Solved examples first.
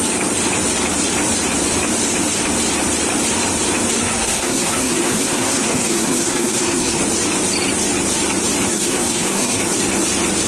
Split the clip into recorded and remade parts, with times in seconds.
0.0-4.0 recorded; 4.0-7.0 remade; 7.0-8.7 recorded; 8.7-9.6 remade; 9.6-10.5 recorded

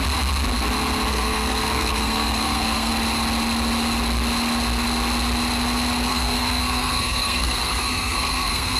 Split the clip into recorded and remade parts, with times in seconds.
0.0-1.1 recorded; 1.1-2.9 remade; 2.9-6.1 recorded; 6.1-8.8 remade

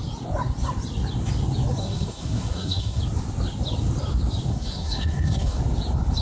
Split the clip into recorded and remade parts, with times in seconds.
0.0-1.8 recorded; 1.8-3.0 remade; 3.0-4.5 recorded; 4.5-5.6 remade; 5.6-6.2 recorded

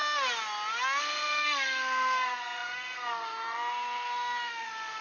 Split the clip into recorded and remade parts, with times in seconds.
0.0-1.0 recorded; 1.0-5.0 remade

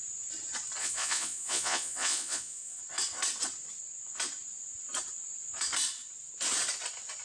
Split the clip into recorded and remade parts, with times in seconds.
0.0-0.8 recorded; 0.8-2.8 remade; 2.8-7.2 recorded

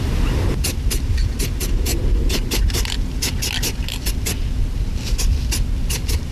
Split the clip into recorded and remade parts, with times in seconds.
0.0-6.3 recorded